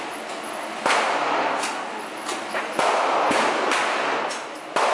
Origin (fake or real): real